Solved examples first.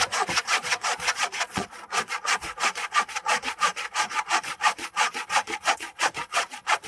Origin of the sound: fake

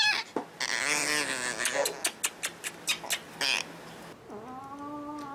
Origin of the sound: real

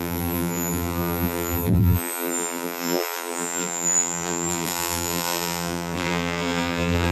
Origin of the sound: fake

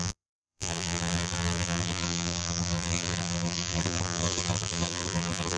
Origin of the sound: fake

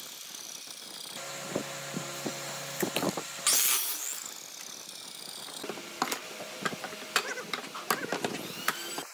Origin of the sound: real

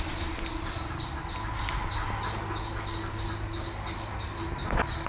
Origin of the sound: real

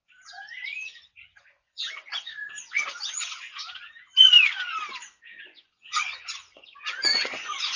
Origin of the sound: fake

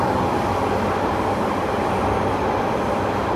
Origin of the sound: real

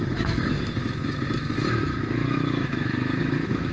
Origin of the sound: fake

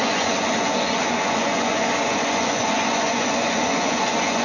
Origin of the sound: fake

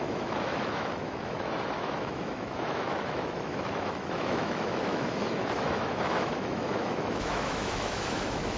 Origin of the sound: fake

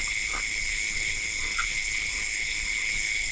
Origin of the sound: fake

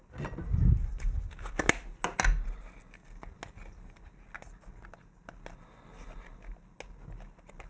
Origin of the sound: real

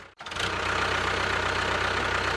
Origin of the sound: real